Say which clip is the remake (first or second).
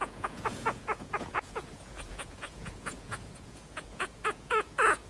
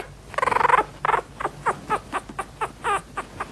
first